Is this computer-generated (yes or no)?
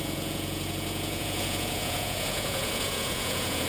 yes